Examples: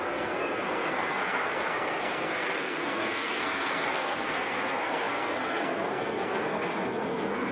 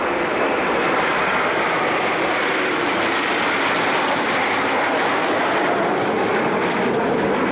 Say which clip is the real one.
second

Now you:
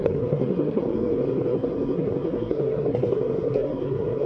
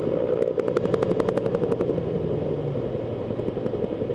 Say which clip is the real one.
second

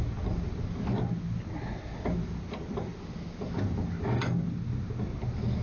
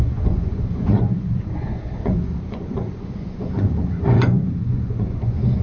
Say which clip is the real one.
first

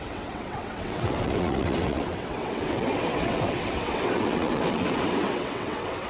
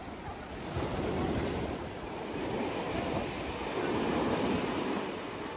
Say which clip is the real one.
second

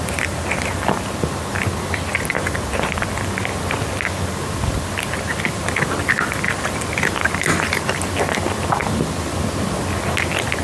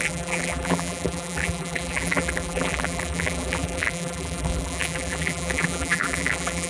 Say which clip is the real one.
first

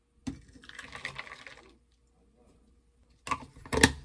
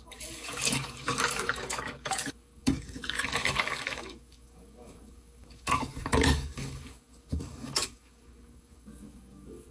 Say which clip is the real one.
first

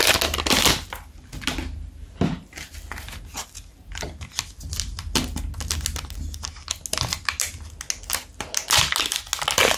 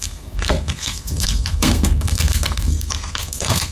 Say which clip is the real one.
first